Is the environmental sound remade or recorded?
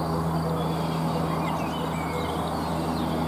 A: recorded